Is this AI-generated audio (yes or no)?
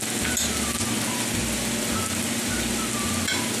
no